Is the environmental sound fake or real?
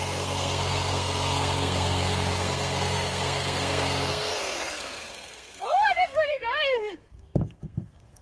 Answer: fake